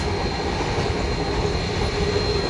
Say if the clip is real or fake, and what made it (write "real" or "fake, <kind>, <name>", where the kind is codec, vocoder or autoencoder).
real